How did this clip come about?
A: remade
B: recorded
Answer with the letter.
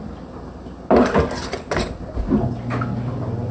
B